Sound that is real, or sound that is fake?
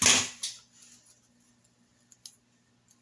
real